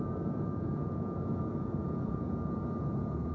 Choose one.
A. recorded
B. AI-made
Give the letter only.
B